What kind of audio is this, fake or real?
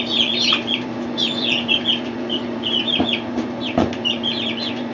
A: fake